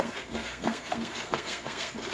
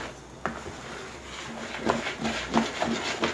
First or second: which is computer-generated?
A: first